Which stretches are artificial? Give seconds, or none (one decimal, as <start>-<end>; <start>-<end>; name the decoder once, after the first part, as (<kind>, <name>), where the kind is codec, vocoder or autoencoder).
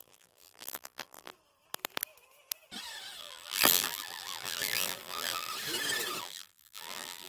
0.0-1.3 (vocoder, BigVGAN v2); 3.2-5.5; 6.2-7.3